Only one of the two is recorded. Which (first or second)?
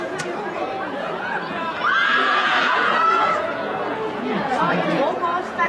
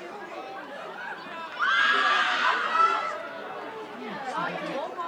second